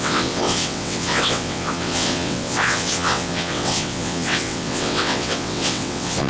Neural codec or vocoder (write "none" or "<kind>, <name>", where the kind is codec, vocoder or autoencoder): vocoder, WaveNeXt